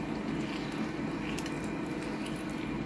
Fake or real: real